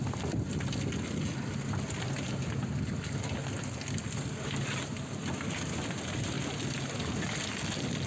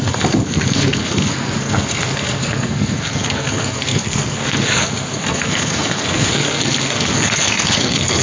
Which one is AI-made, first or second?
second